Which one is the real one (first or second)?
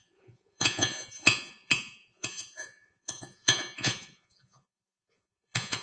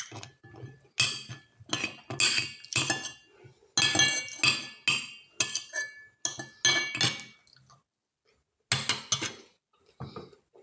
second